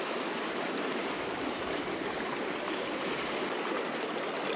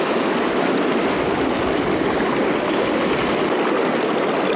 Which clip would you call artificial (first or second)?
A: first